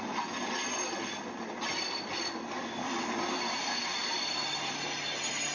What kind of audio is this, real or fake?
real